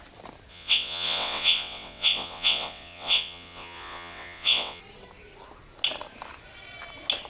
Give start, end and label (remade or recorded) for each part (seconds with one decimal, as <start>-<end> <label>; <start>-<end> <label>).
0.0-0.5 recorded; 0.5-4.8 remade; 4.8-7.3 recorded

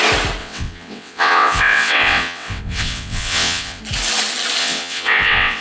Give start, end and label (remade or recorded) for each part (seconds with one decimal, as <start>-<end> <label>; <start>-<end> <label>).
0.0-0.4 recorded; 0.4-3.8 remade; 3.8-4.6 recorded; 4.6-5.6 remade